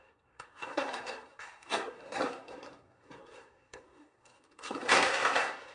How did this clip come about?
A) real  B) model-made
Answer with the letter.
B